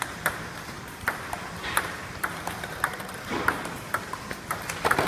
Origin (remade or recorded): remade